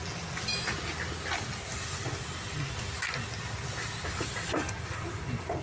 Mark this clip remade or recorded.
recorded